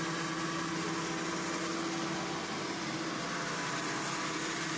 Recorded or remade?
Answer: recorded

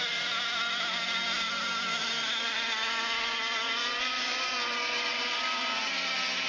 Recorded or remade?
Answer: recorded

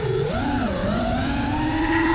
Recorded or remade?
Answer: remade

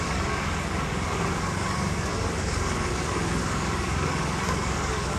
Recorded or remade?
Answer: remade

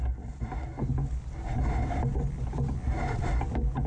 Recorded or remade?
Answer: recorded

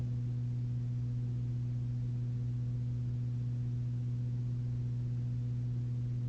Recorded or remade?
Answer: recorded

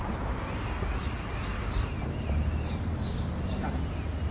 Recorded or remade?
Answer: recorded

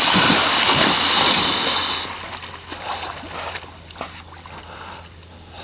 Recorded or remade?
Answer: recorded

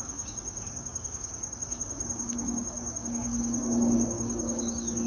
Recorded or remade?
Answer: remade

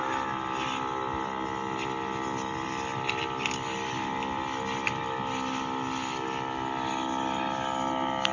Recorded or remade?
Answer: recorded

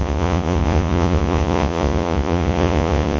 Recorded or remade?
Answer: remade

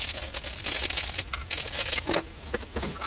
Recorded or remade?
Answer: recorded